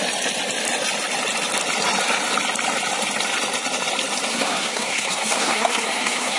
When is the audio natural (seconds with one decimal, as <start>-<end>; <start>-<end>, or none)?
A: 0.0-4.3